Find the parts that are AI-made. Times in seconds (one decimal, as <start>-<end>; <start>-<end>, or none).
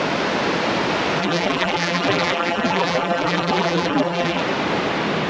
1.2-4.4